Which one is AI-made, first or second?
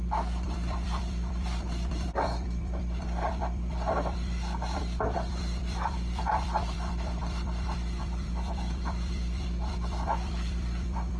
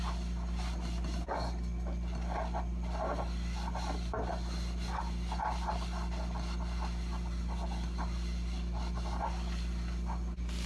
first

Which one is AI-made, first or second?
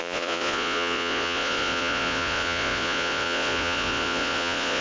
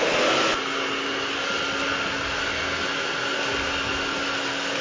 first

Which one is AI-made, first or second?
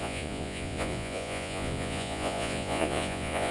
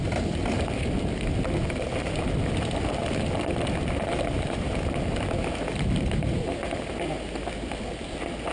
first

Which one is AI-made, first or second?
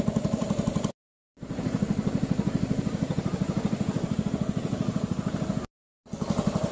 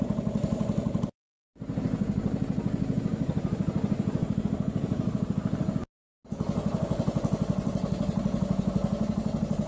first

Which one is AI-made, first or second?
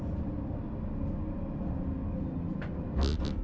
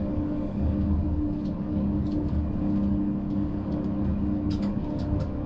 second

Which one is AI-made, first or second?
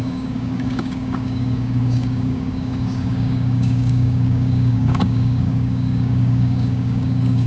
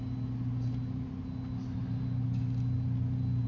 first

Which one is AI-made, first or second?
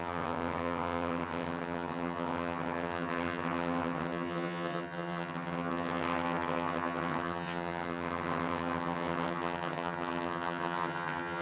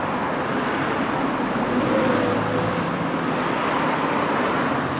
first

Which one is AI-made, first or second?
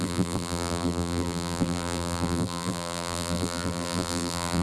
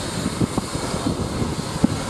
first